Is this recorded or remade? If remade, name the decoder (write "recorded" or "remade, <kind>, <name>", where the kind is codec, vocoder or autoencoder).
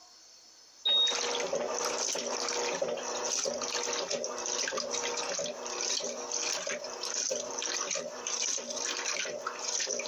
recorded